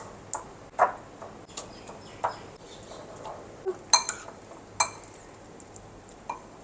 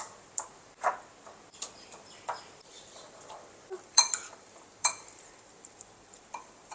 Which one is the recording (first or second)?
first